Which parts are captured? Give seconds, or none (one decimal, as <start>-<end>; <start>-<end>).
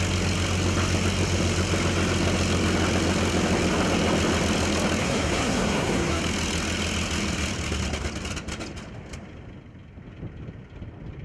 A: 0.0-5.0; 6.2-11.2